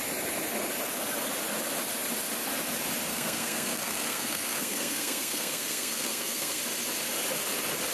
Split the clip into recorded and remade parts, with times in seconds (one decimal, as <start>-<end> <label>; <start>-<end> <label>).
0.0-3.1 recorded; 3.1-6.6 remade; 6.6-7.9 recorded